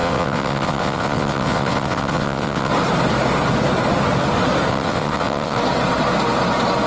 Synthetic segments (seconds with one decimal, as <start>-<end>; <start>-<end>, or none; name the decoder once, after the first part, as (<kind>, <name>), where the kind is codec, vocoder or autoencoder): 0.0-2.7 (vocoder, WaveNeXt); 4.7-5.6